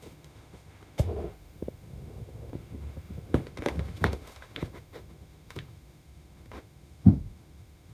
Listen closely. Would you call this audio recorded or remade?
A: remade